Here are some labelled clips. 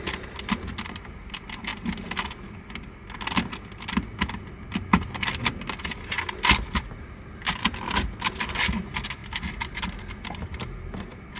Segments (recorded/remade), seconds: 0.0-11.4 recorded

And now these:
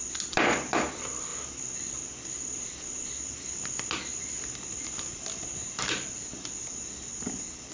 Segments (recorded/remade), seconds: 0.0-7.7 recorded

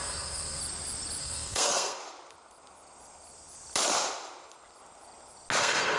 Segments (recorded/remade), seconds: 0.0-0.6 remade; 0.6-1.2 recorded; 1.2-2.0 remade; 2.0-5.6 recorded; 5.6-6.0 remade

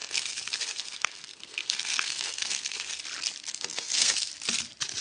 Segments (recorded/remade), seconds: 0.0-3.0 remade; 3.0-3.5 recorded; 3.5-4.3 remade; 4.3-5.0 recorded